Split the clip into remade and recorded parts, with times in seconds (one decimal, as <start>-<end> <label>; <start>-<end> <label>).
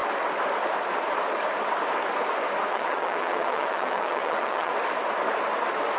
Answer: 0.0-2.7 recorded; 2.7-4.7 remade; 4.7-6.0 recorded